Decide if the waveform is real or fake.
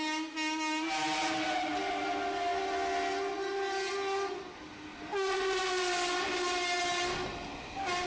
real